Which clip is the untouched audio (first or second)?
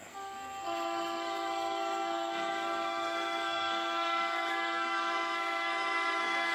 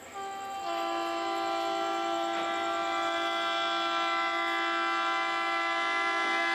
second